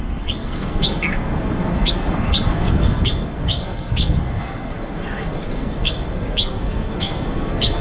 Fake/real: fake